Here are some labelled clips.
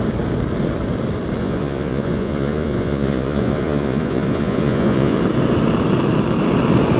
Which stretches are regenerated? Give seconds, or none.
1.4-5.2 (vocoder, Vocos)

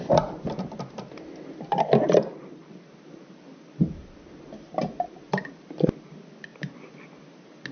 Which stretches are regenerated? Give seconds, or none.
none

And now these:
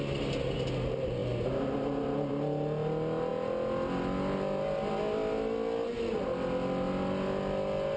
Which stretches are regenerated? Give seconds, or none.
none

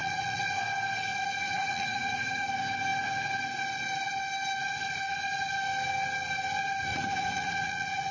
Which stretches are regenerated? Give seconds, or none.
0.0-0.6 (vocoder, Vocos); 1.1-2.5; 6.9-8.1